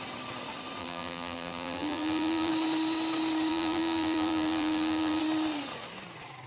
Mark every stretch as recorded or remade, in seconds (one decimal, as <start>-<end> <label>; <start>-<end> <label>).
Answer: 0.0-0.8 recorded; 0.8-2.5 remade; 2.5-3.5 recorded; 3.5-5.2 remade; 5.2-6.5 recorded

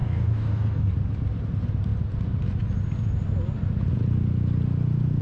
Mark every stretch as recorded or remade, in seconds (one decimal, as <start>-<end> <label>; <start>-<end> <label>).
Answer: 0.0-0.9 remade; 0.9-5.2 recorded

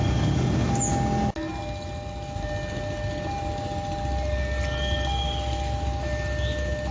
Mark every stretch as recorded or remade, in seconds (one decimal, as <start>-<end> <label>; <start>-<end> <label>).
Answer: 0.0-6.9 recorded

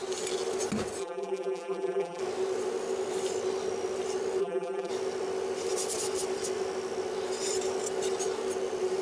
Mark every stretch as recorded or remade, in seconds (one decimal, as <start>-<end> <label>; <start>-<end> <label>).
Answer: 0.0-1.0 recorded; 1.0-2.2 remade; 2.2-4.4 recorded; 4.4-4.9 remade; 4.9-9.0 recorded

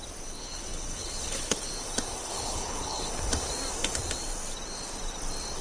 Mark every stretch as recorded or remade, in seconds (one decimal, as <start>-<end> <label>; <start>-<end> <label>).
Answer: 0.0-0.4 recorded; 0.4-1.7 remade; 1.7-2.2 recorded; 2.2-3.1 remade; 3.1-5.6 recorded

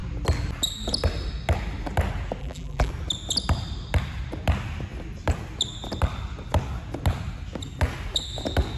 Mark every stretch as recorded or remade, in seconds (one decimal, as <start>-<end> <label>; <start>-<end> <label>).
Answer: 0.0-2.4 recorded; 2.4-2.9 remade; 2.9-8.8 recorded

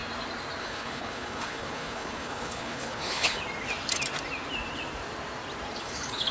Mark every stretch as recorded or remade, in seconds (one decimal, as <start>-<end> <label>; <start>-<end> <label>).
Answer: 0.0-0.6 recorded; 0.6-3.4 remade; 3.4-5.8 recorded; 5.8-6.3 remade